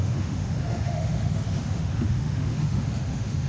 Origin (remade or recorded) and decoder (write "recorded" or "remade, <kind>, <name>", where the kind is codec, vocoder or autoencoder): remade, autoencoder, DAC-VAE